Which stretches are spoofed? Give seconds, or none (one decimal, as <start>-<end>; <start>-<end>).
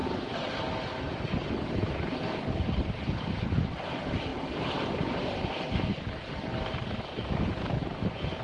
0.0-1.5; 4.3-7.0